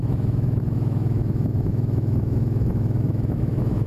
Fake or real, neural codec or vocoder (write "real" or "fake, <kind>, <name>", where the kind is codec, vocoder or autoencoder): fake, autoencoder, DAC-VAE